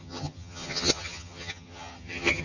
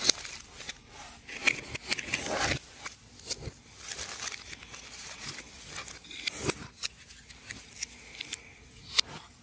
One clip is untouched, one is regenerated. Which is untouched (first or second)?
second